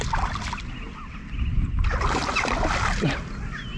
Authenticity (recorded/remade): recorded